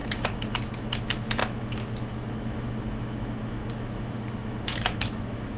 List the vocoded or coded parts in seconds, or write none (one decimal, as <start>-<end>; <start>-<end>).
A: 0.0-5.6